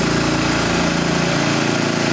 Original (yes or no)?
yes